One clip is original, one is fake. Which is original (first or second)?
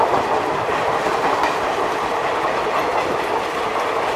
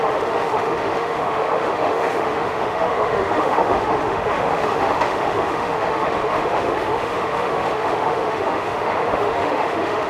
first